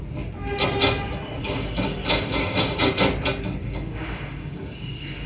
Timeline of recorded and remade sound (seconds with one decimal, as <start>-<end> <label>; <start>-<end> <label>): 0.0-1.4 recorded; 1.4-2.9 remade; 2.9-3.6 recorded; 3.6-5.3 remade